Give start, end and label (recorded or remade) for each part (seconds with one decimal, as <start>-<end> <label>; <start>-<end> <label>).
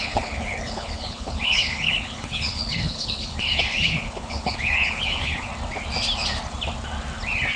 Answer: 0.0-5.5 remade; 5.5-7.6 recorded